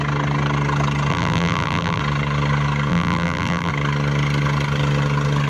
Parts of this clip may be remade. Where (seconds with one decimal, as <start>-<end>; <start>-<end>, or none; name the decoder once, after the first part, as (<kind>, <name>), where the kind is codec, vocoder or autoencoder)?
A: 1.1-2.0 (vocoder, BigVGAN v2); 2.9-3.7